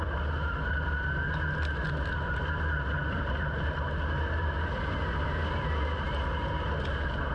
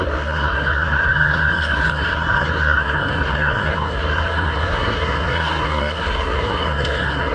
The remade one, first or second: second